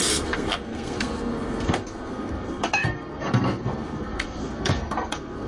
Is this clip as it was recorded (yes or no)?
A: no